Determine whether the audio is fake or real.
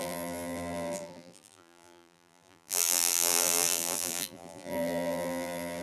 fake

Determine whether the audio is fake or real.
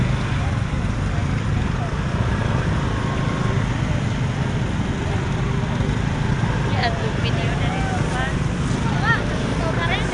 real